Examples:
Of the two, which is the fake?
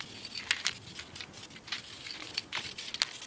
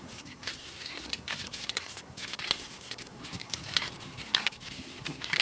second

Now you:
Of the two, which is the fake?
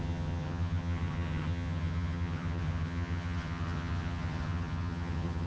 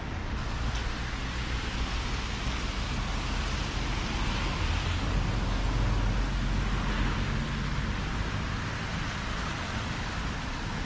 first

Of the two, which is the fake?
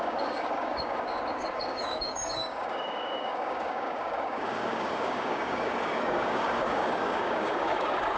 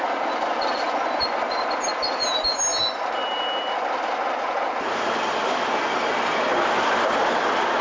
first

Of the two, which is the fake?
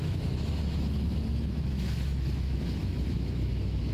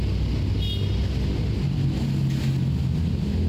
first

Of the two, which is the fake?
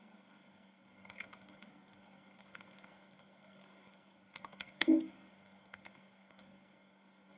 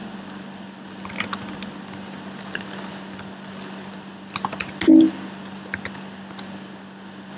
first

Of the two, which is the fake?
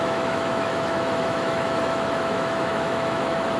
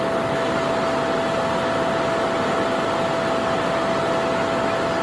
first